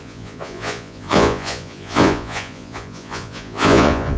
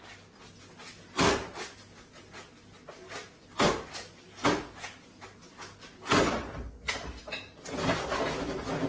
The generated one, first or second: first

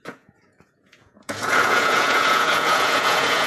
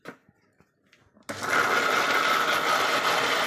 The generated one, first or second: first